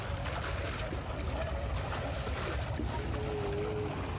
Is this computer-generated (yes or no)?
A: no